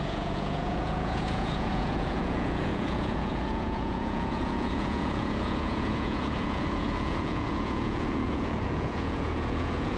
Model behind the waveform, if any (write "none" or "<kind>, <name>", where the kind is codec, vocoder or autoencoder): vocoder, Vocos